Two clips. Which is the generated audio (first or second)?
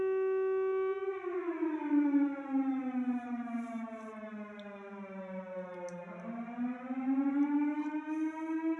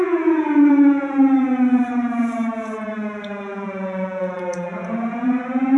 second